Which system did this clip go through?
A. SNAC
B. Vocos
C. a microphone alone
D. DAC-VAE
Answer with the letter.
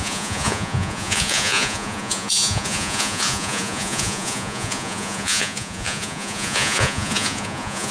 B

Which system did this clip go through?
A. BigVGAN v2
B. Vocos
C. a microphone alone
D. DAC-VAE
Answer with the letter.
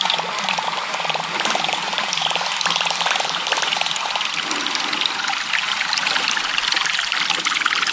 C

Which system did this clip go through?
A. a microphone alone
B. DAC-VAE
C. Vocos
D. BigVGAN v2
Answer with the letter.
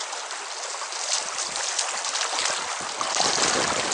A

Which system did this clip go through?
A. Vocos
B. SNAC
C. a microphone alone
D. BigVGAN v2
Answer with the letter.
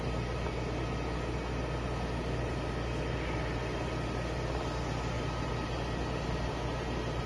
C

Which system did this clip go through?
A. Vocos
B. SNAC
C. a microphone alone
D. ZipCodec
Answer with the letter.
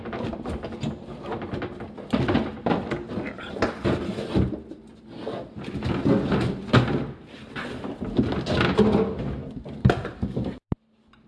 C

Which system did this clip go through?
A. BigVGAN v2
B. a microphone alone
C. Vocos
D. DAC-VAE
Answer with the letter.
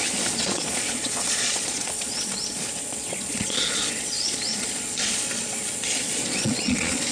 C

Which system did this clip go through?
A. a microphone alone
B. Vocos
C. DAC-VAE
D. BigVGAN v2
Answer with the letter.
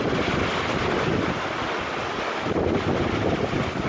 A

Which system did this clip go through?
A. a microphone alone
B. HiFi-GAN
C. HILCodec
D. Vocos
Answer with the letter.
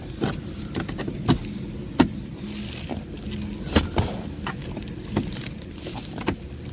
A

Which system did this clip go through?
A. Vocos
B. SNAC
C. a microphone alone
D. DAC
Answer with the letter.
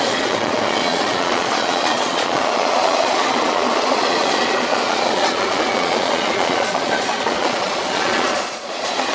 A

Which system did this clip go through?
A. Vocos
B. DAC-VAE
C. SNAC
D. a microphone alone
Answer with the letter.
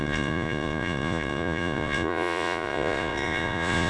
A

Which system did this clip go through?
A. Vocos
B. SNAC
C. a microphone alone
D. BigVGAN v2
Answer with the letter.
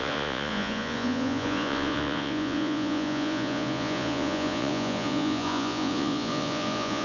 A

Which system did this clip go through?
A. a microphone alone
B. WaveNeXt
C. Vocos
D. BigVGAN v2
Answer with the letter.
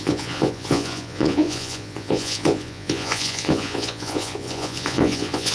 C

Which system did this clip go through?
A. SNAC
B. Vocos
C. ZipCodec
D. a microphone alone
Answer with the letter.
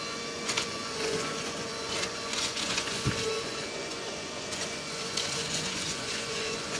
B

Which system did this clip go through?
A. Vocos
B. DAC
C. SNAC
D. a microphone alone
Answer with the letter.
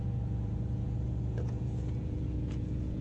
A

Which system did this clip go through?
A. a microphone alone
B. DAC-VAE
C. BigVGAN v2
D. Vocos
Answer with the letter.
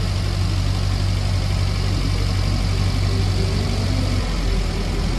A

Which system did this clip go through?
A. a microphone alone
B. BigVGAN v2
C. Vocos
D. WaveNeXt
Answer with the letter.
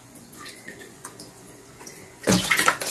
C